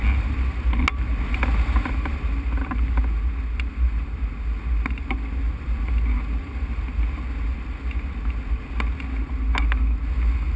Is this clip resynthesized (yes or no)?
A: no